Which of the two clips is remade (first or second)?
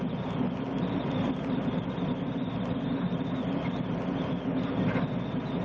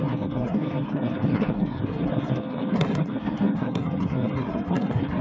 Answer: second